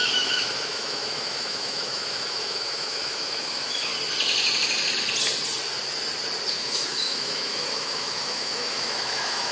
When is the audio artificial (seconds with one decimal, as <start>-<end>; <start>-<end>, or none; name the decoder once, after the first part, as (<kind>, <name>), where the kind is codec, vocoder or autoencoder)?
0.0-3.9 (autoencoder, DAC-VAE); 6.5-9.5